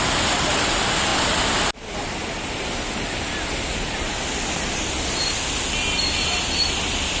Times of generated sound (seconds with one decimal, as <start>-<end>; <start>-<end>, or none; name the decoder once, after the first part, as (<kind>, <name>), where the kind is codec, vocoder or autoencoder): none